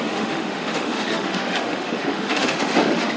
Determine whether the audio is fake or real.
fake